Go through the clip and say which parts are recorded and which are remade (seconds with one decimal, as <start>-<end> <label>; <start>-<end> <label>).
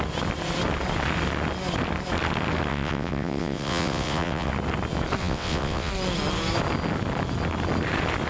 0.0-2.7 recorded; 2.7-4.5 remade; 4.5-5.2 recorded; 5.2-5.9 remade; 5.9-8.3 recorded